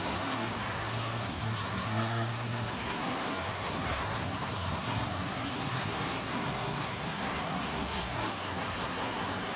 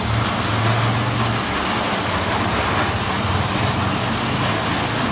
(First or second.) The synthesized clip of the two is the first